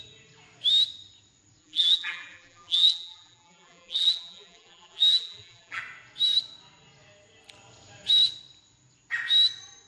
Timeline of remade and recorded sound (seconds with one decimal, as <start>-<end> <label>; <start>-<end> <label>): 0.0-1.6 recorded; 1.6-5.8 remade; 5.8-9.9 recorded